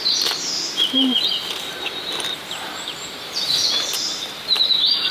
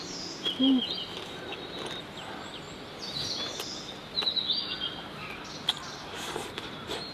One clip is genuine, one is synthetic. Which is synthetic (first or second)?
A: first